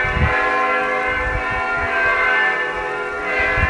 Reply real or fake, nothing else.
real